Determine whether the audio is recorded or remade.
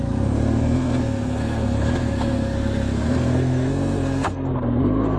remade